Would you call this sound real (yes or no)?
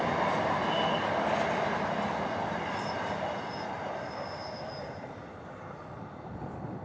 yes